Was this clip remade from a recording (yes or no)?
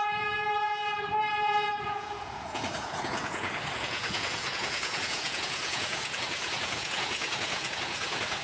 yes